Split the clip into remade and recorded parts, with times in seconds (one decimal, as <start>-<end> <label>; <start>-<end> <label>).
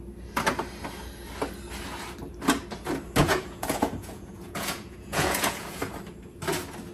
0.0-3.2 recorded; 3.2-5.8 remade; 5.8-6.9 recorded